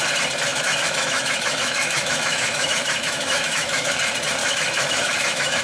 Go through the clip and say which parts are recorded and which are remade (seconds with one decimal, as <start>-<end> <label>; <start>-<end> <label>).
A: 0.0-0.5 recorded; 0.5-3.9 remade; 3.9-4.4 recorded; 4.4-5.6 remade